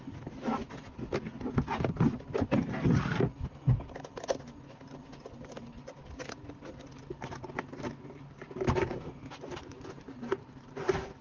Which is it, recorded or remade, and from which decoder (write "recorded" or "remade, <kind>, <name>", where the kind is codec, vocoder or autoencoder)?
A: recorded